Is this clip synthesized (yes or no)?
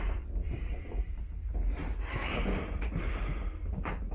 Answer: no